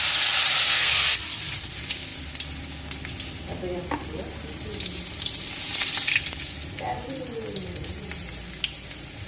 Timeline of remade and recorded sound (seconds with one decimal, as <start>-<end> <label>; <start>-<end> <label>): 0.0-0.6 recorded; 0.6-1.2 remade; 1.2-9.3 recorded